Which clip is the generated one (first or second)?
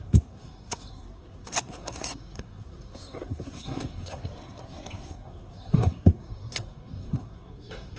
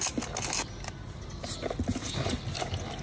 first